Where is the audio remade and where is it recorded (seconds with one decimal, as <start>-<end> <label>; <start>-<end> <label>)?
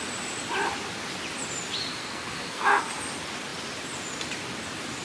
0.0-2.0 recorded; 2.0-2.9 remade; 2.9-5.0 recorded